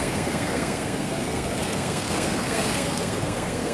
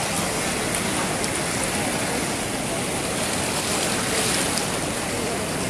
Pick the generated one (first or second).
first